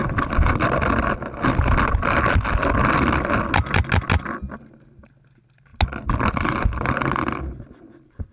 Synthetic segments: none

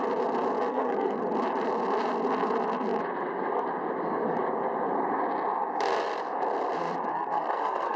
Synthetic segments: 0.7-1.2 (codec, SNAC); 7.1-8.0

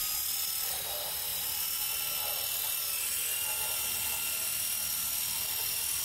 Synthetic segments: none

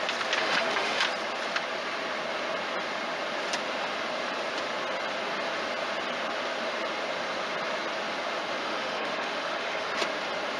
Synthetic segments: 0.4-1.0 (autoencoder, DAC-VAE); 8.6-9.9

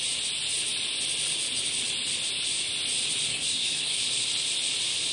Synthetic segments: 3.3-4.0 (codec, SNAC)